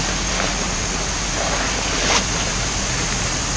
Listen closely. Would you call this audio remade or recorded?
recorded